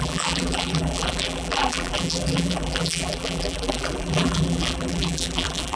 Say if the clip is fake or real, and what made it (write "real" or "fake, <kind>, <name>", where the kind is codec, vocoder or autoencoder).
fake, vocoder, BigVGAN v2